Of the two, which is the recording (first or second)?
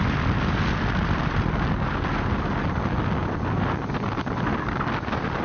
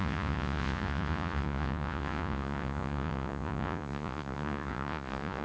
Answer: first